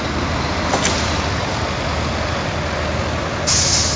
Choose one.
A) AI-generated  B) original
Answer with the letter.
B